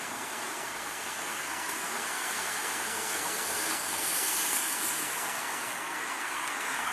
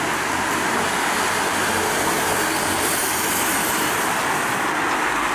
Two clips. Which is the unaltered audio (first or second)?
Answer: second